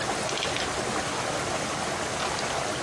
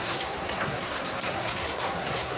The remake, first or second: second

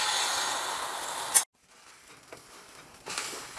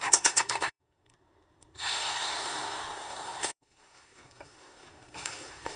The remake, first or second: second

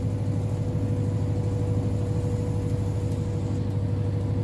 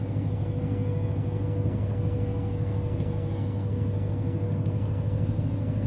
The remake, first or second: second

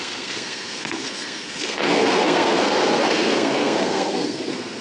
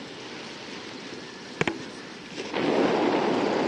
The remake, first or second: first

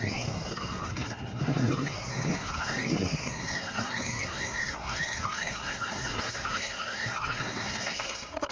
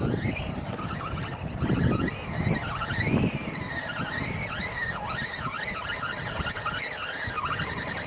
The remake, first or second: first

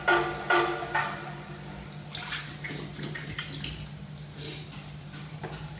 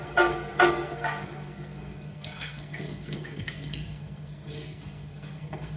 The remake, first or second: second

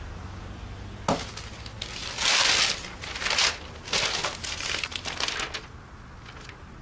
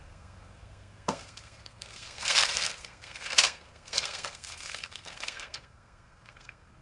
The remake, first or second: second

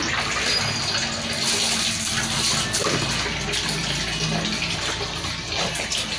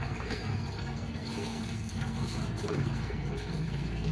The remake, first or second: second